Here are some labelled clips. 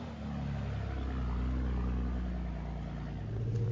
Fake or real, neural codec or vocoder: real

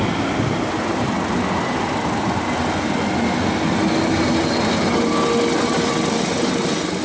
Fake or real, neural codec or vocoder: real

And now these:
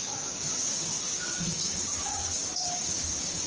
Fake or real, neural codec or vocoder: fake, codec, DAC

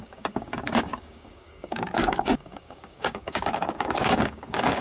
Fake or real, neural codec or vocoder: fake, codec, DAC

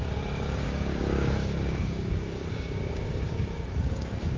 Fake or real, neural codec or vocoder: fake, codec, DAC